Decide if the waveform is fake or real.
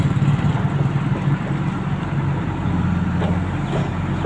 real